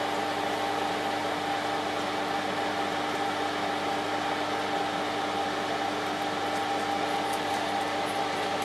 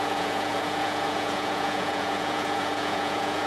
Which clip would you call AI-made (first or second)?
second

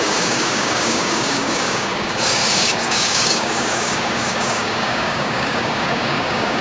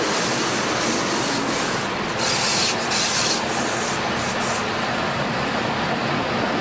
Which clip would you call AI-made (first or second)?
first